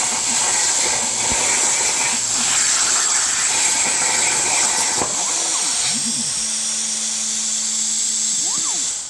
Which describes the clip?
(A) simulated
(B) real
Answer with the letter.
B